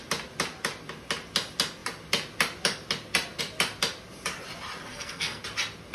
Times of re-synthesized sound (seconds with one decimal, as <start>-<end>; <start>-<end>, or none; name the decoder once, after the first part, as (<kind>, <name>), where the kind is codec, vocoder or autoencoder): 4.9-5.4 (codec, SNAC)